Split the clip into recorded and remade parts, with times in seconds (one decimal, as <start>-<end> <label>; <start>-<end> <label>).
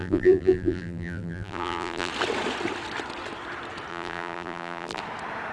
0.0-2.1 remade; 2.1-3.9 recorded; 3.9-5.0 remade; 5.0-5.5 recorded